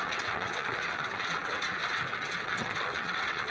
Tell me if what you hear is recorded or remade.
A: remade